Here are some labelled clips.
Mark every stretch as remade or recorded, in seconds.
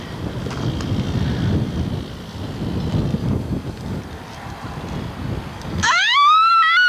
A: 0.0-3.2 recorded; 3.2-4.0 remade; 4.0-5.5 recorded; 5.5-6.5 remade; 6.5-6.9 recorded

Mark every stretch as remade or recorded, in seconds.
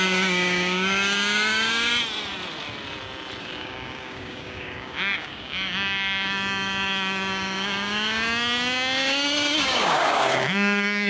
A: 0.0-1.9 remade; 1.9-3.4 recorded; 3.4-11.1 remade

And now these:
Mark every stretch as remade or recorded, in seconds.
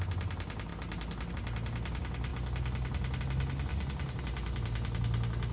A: 0.0-3.7 recorded; 3.7-4.2 remade; 4.2-5.5 recorded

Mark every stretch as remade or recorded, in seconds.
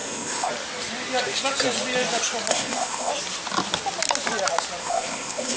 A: 0.0-0.5 remade; 0.5-2.5 recorded; 2.5-3.1 remade; 3.1-4.8 recorded; 4.8-5.6 remade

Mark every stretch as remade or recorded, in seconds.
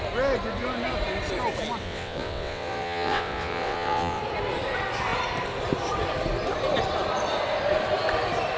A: 0.0-1.8 recorded; 1.8-4.2 remade; 4.2-8.6 recorded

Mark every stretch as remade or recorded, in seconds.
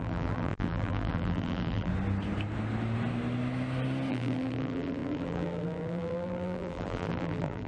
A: 0.0-1.9 remade; 1.9-4.1 recorded; 4.1-7.7 remade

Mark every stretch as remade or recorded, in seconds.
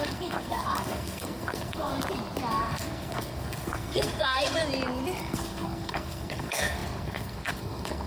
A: 0.0-1.9 remade; 1.9-2.5 recorded; 2.5-4.6 remade; 4.6-5.2 recorded; 5.2-8.1 remade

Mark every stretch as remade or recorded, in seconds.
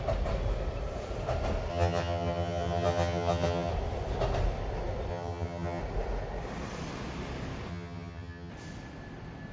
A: 0.0-1.7 recorded; 1.7-3.7 remade; 3.7-5.1 recorded; 5.1-5.8 remade; 5.8-7.7 recorded; 7.7-8.5 remade; 8.5-9.5 recorded